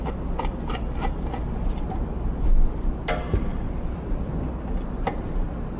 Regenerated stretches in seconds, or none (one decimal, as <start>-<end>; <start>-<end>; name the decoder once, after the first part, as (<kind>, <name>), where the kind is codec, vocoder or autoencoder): 0.0-1.9 (vocoder, BigVGAN v2); 3.5-4.1